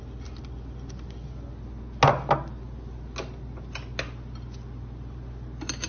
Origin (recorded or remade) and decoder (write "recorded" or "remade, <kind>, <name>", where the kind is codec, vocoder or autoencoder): recorded